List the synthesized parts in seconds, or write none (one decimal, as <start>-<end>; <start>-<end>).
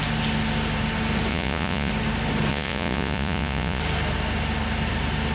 1.3-1.9; 2.5-3.8